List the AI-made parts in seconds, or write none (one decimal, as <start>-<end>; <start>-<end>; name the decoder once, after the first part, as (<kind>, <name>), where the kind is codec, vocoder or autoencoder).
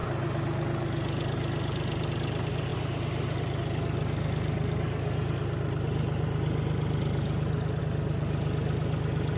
none